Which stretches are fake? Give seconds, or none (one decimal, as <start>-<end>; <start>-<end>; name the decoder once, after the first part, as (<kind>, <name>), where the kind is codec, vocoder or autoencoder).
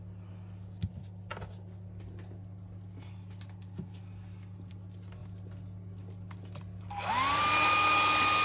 none